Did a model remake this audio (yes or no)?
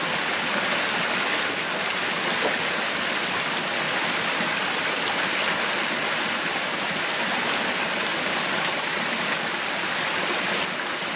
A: no